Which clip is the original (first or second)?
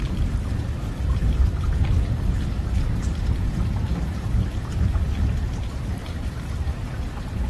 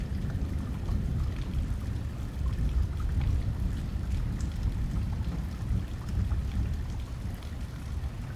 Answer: second